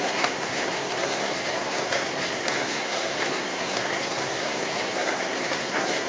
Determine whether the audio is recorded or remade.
remade